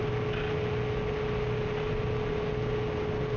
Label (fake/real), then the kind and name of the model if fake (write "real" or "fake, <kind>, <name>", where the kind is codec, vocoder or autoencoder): real